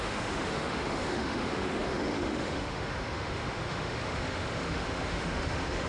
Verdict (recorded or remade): remade